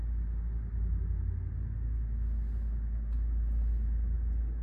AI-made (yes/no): no